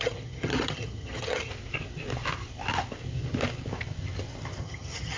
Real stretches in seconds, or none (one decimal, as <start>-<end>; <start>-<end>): 1.5-4.6